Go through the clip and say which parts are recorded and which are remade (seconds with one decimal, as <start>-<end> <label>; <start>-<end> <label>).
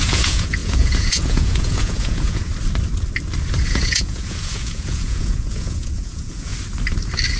0.0-2.5 remade; 2.5-3.7 recorded; 3.7-6.5 remade; 6.5-7.4 recorded